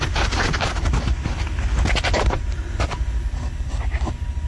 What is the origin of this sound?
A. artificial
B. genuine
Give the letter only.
B